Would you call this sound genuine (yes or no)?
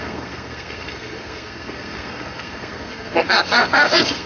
no